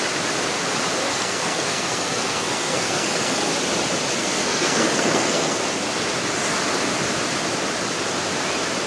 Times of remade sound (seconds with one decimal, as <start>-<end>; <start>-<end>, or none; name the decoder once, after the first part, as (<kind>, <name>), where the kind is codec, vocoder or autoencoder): 1.1-3.5 (codec, SNAC); 4.2-5.6